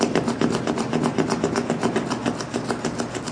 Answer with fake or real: real